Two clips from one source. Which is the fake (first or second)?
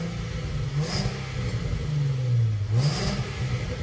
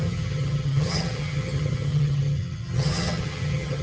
second